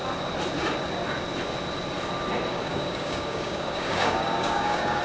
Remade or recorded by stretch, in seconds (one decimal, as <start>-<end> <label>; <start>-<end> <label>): 0.0-2.5 recorded; 2.5-5.0 remade